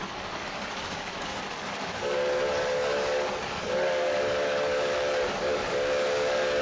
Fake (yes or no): yes